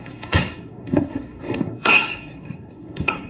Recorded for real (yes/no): no